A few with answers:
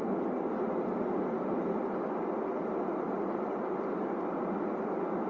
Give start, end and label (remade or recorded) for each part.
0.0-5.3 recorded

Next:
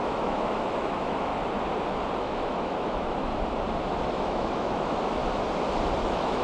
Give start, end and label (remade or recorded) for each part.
0.0-1.3 remade; 1.3-2.2 recorded; 2.2-3.3 remade; 3.3-4.1 recorded; 4.1-5.2 remade; 5.2-6.0 recorded; 6.0-6.4 remade

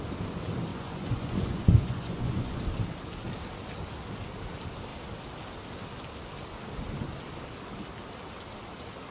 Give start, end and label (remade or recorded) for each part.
0.0-0.7 recorded; 0.7-2.6 remade; 2.6-9.1 recorded

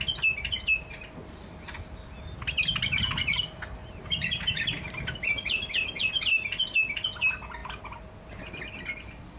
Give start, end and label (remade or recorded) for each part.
0.0-3.8 recorded; 3.8-6.1 remade; 6.1-7.6 recorded; 7.6-8.4 remade; 8.4-9.4 recorded

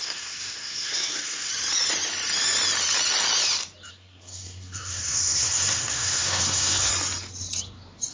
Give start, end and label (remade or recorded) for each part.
0.0-1.5 remade; 1.5-3.9 recorded; 3.9-6.9 remade; 6.9-8.1 recorded

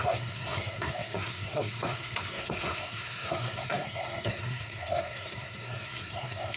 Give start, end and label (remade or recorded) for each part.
0.0-6.6 remade